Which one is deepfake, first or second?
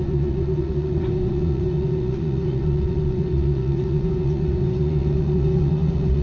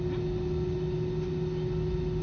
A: first